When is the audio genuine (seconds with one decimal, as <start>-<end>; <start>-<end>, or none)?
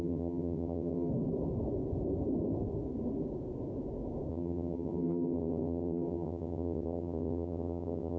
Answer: 1.1-4.3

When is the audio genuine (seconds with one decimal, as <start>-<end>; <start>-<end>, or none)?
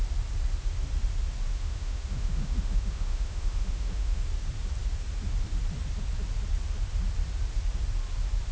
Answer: 0.0-1.5; 4.2-8.5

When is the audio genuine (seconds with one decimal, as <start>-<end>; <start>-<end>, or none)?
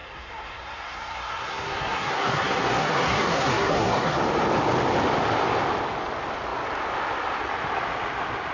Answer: 4.2-8.5